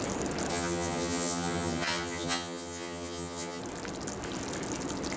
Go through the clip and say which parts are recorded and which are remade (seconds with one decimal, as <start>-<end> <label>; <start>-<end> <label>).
0.0-0.5 recorded; 0.5-3.6 remade; 3.6-5.2 recorded